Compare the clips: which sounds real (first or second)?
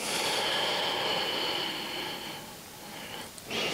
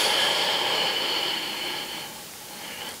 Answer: first